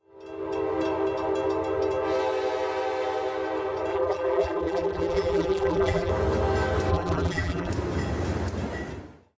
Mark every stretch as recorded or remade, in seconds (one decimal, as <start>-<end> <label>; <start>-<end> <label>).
0.0-3.9 recorded; 3.9-6.1 remade; 6.1-6.9 recorded; 6.9-7.7 remade; 7.7-9.4 recorded